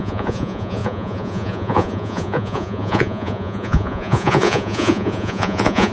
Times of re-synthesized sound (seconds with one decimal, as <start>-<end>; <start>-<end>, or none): 0.0-5.9